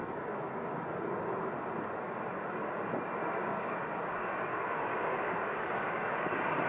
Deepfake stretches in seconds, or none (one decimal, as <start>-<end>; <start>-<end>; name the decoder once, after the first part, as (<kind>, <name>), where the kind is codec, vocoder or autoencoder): 0.0-0.8 (codec, DAC); 3.4-6.3